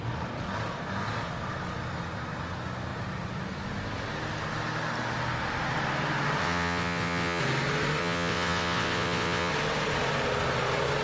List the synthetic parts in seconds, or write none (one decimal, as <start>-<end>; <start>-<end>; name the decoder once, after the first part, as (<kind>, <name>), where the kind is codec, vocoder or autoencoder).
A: 6.4-7.4 (vocoder, WaveNeXt); 8.0-9.5